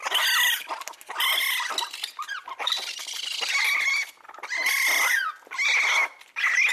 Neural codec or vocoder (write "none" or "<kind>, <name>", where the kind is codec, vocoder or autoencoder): none